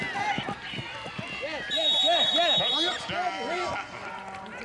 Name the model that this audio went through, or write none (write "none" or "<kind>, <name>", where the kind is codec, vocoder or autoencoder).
none